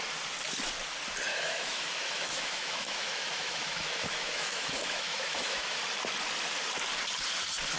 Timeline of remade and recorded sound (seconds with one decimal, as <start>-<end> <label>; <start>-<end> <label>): 0.0-1.3 recorded; 1.3-5.8 remade; 5.8-7.8 recorded